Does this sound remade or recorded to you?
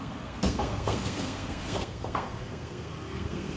remade